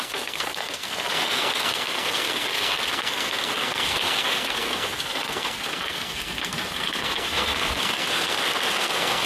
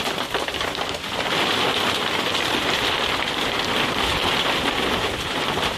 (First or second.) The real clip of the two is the second